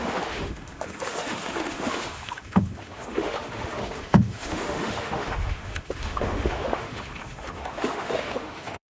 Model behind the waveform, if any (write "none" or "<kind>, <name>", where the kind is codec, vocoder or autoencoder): autoencoder, DAC-VAE